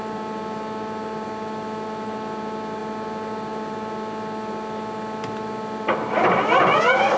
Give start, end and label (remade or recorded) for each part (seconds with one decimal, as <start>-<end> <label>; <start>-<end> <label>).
0.0-7.2 recorded